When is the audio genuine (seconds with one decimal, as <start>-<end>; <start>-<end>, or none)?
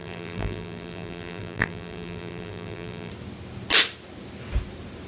3.1-5.1